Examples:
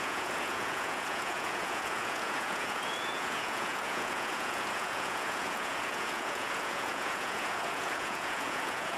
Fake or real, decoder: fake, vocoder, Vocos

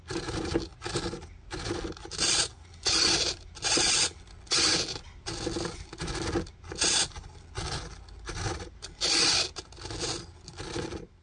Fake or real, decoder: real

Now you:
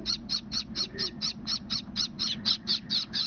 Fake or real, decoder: fake, vocoder, Vocos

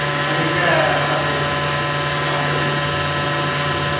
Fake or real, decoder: real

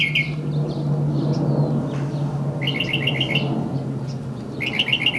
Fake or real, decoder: real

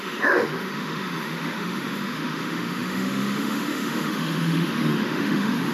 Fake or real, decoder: fake, autoencoder, DAC-VAE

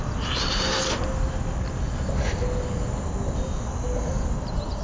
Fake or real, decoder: real